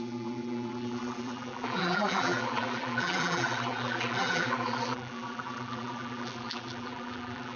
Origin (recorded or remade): remade